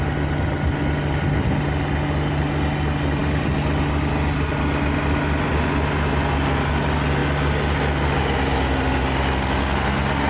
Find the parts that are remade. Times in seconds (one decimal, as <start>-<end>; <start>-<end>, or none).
none